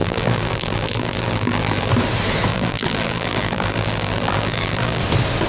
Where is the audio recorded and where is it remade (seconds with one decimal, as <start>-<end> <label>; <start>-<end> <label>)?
0.0-1.9 remade; 1.9-2.5 recorded; 2.5-5.0 remade; 5.0-5.5 recorded